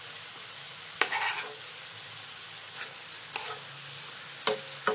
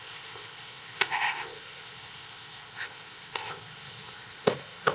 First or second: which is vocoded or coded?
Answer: second